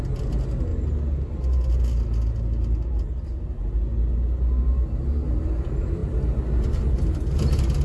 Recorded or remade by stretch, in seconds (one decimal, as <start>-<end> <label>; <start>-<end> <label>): 0.0-7.8 recorded